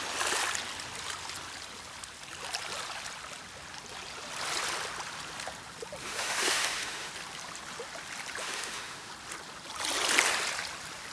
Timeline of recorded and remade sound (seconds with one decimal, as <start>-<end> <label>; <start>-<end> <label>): 0.0-6.0 recorded; 6.0-7.1 remade; 7.1-8.4 recorded; 8.4-9.1 remade; 9.1-11.1 recorded